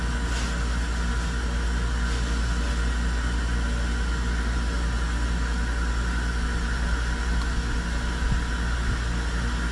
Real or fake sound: real